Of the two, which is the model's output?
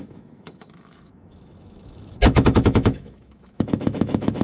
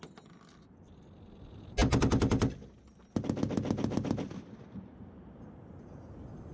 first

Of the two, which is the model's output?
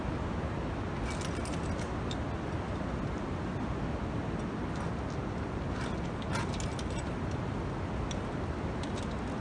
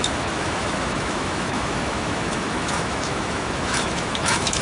second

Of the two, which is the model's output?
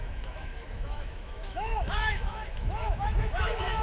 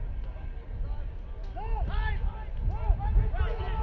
first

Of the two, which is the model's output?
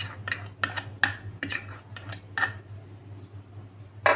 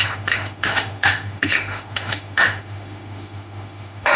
second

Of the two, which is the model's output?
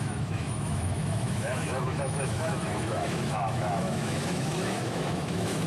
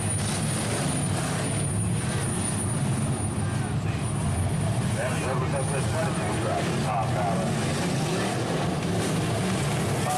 first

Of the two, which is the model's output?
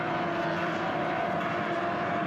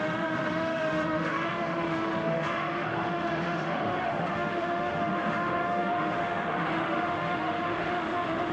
second